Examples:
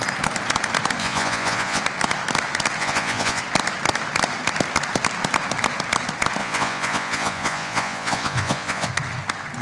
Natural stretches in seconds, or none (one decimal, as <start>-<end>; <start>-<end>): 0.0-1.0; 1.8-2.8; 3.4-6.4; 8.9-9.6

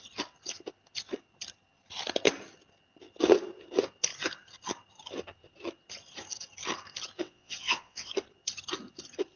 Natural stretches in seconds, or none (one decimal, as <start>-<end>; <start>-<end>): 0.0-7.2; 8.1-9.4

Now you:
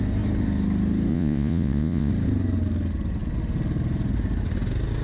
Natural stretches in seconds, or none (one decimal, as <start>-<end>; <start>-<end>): 0.0-1.1; 2.1-5.0